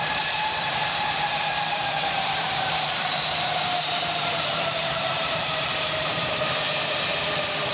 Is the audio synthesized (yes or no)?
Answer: yes